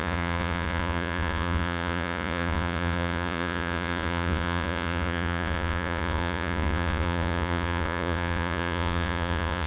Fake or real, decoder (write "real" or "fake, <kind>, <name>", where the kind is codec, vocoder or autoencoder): fake, vocoder, Vocos